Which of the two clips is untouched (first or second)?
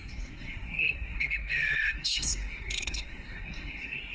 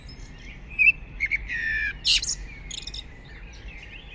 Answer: second